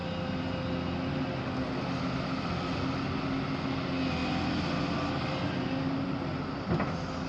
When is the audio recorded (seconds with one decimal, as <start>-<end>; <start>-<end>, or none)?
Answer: 0.0-7.3

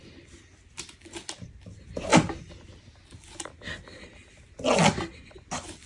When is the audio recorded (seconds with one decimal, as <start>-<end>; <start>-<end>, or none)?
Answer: 0.0-5.9

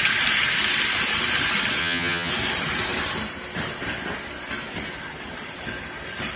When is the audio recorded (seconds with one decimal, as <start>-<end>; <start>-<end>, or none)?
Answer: 0.0-1.8; 2.3-6.4

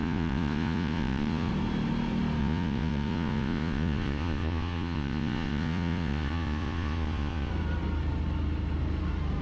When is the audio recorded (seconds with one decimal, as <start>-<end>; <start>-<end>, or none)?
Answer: 1.5-2.4; 7.5-9.4